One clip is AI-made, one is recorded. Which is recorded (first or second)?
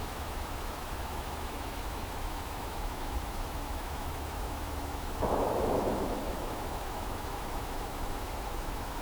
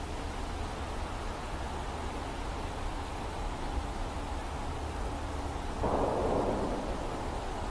second